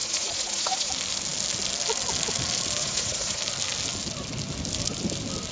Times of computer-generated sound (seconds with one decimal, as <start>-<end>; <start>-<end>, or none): 0.0-0.9; 2.8-3.4